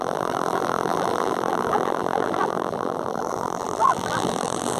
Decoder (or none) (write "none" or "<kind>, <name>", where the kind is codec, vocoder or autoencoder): vocoder, BigVGAN v2